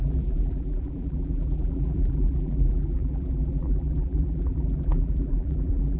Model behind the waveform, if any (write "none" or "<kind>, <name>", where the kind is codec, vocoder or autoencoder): vocoder, BigVGAN v2